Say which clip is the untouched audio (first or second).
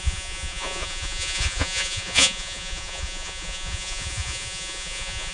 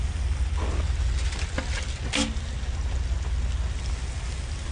second